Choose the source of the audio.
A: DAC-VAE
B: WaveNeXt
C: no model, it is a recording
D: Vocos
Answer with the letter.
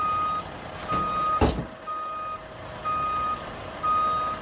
C